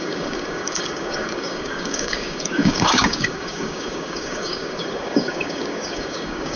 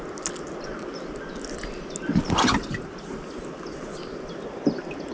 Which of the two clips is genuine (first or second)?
second